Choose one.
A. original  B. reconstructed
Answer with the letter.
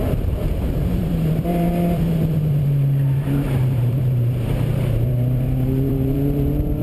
B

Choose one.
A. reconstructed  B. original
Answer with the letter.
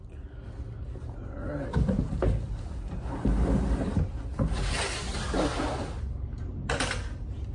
B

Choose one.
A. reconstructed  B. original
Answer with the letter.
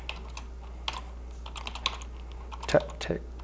B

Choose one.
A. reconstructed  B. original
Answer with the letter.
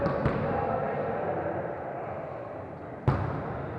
B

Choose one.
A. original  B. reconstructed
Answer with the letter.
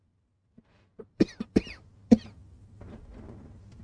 B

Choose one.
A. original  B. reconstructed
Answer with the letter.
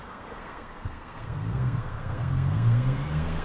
B